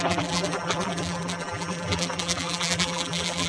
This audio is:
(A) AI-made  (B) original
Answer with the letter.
A